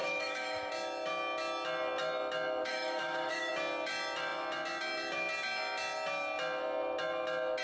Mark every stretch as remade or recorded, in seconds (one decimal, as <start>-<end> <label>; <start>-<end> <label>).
0.0-0.7 remade; 0.7-2.6 recorded; 2.6-3.5 remade; 3.5-7.6 recorded